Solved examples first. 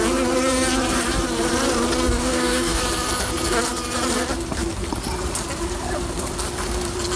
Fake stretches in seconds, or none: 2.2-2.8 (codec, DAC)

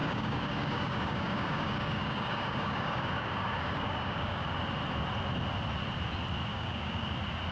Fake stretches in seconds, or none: 0.0-4.5 (codec, DAC); 6.5-7.1

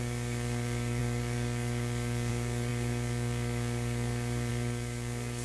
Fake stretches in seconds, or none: 0.0-5.4 (codec, DAC)

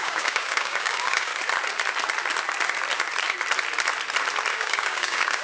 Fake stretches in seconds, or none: 0.0-1.3 (codec, DAC); 4.5-5.4

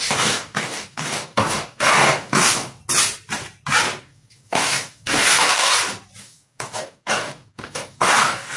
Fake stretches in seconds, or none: 0.0-2.8 (codec, DAC); 4.0-5.7; 6.2-8.6

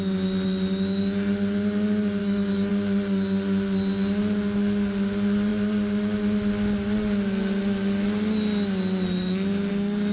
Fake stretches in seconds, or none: 2.2-2.7 (codec, DAC)

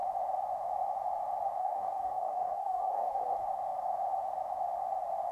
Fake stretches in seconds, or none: 1.6-3.2 (codec, DAC)

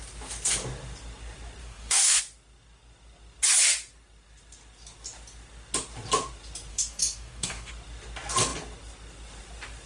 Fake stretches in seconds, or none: 1.6-2.2 (codec, DAC); 6.7-7.7